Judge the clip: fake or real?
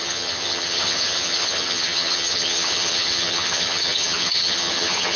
fake